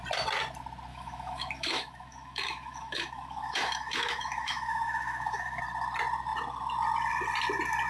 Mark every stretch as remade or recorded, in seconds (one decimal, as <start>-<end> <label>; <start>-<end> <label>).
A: 0.0-0.9 recorded; 0.9-5.6 remade; 5.6-7.9 recorded